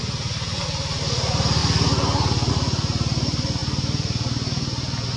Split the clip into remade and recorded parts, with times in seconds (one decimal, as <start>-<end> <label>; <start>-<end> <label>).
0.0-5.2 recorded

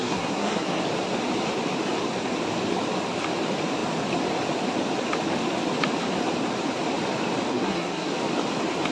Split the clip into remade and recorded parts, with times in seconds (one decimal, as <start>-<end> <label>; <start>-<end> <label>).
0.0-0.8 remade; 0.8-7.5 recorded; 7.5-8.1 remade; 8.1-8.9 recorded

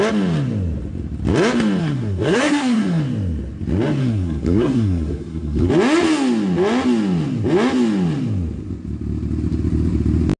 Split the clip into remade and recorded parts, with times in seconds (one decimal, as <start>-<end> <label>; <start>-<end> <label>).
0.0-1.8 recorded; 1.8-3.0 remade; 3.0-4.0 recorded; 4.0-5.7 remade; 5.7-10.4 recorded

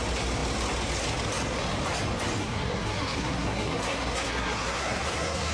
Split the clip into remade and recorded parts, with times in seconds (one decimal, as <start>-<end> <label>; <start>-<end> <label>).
0.0-2.4 recorded; 2.4-5.5 remade

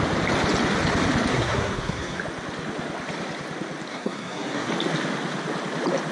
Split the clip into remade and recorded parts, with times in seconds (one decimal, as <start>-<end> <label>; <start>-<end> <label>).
0.0-1.3 recorded; 1.3-2.2 remade; 2.2-3.9 recorded; 3.9-4.7 remade; 4.7-6.1 recorded